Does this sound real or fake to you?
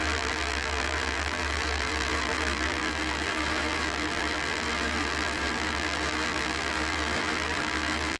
fake